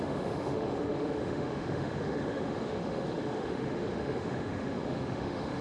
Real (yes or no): no